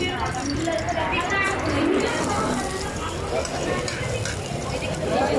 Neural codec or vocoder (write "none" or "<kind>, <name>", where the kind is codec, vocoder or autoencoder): none